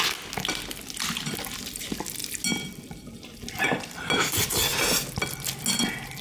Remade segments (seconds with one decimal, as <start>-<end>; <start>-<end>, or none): none

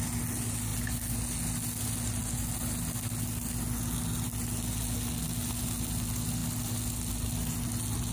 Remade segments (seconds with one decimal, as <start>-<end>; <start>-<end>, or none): none

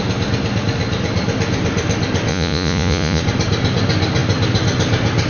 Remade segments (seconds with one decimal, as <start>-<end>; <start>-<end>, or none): 2.3-3.2

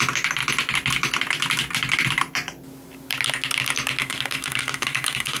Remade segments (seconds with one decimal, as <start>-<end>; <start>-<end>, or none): 4.0-5.4

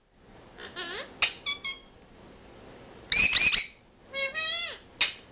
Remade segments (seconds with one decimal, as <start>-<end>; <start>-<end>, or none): none

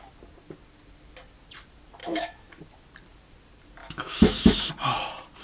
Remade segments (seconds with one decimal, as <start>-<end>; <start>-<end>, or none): 2.0-2.6; 3.8-4.7

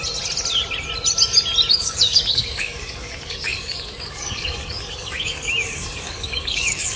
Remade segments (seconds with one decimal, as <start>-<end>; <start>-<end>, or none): 1.7-7.0